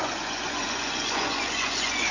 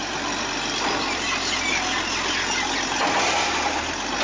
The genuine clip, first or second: second